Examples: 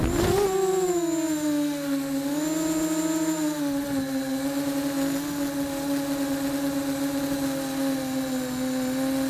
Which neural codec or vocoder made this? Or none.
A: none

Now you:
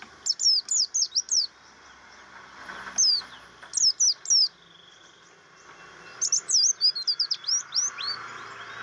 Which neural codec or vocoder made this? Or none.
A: none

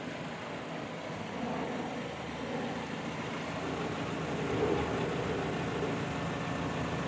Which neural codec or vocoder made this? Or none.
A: none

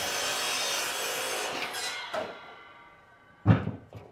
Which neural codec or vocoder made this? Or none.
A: none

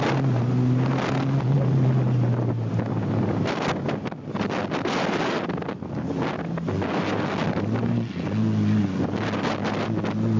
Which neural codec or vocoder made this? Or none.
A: none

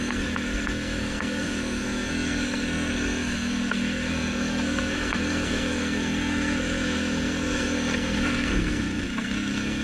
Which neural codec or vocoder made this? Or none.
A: codec, SNAC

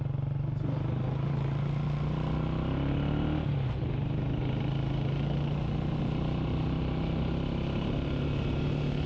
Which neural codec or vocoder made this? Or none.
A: none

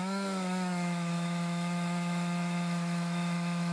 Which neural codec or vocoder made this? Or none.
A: autoencoder, DAC-VAE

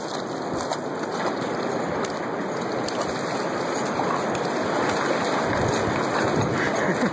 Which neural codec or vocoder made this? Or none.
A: none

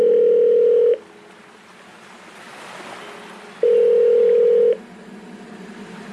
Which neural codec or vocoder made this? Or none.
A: none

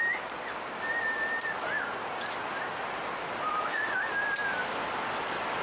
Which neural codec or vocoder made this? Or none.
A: none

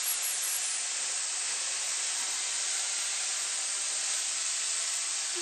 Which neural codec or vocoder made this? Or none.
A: none